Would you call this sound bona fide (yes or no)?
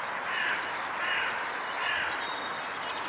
yes